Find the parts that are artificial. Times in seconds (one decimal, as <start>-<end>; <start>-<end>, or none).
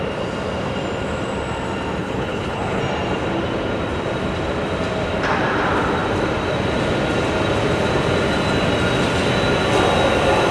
2.0-2.8